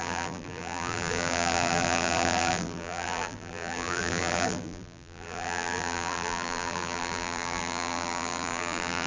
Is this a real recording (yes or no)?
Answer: no